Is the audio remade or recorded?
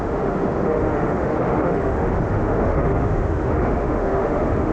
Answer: remade